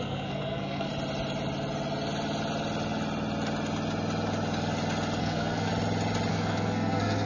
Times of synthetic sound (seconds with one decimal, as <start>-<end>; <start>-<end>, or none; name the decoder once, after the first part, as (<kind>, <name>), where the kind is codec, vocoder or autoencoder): 0.0-0.9 (codec, SNAC); 5.2-5.7; 6.3-7.3